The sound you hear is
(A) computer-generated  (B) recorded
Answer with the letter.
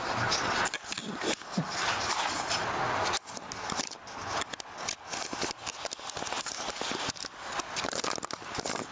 B